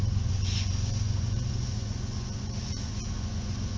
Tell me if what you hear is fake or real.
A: fake